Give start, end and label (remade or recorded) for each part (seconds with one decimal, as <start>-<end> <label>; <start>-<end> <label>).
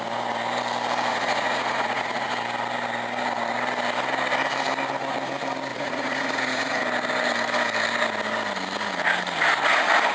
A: 0.0-1.1 recorded; 1.1-2.3 remade; 2.3-5.7 recorded; 5.7-6.8 remade; 6.8-10.1 recorded